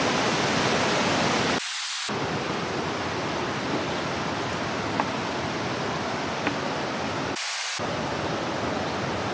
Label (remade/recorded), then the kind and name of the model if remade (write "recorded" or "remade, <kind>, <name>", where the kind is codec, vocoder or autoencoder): recorded